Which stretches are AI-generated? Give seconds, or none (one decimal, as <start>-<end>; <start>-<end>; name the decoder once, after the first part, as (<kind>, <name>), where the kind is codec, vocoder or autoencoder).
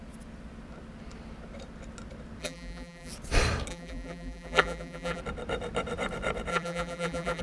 2.4-3.1 (vocoder, BigVGAN v2); 3.7-5.2; 6.5-7.4